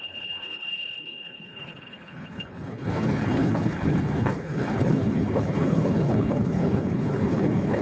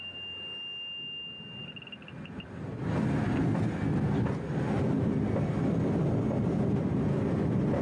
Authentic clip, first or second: second